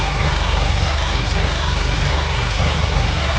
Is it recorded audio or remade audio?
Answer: remade